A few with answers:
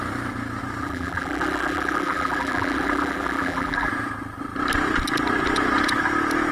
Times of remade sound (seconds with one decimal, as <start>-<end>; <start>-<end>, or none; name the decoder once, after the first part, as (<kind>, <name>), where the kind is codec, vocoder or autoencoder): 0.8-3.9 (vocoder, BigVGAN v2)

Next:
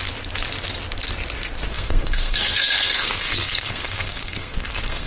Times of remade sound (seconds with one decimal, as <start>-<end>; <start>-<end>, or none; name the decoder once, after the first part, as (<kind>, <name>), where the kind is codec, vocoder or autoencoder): 1.7-5.1 (codec, SNAC)

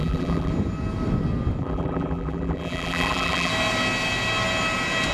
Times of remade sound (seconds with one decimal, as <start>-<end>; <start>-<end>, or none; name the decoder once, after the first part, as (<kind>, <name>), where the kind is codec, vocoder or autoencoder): 0.0-0.5 (vocoder, BigVGAN v2); 1.6-3.5

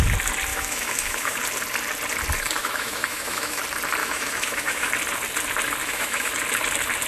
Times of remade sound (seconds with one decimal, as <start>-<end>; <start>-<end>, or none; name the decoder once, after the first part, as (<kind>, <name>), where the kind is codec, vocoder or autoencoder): 0.5-1.4 (autoencoder, DAC-VAE); 2.6-3.6; 4.0-4.9; 5.8-6.3

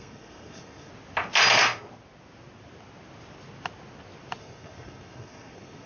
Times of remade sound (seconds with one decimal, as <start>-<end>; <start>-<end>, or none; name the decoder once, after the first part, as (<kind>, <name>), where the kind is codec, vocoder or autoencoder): 0.0-0.9 (codec, SNAC); 4.4-5.9

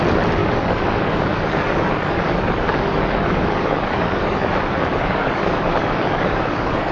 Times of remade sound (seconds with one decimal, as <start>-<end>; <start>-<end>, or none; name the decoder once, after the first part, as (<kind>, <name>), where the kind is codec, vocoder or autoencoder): 0.4-4.5 (codec, DAC); 4.9-6.9

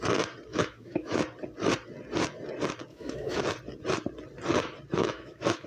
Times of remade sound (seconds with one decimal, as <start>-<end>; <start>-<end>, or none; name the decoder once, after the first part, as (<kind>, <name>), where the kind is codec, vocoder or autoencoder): 0.5-1.2 (autoencoder, DAC-VAE); 2.9-3.4; 5.0-5.7